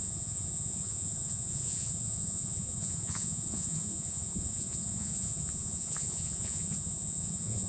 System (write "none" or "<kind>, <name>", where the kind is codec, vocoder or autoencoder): vocoder, Vocos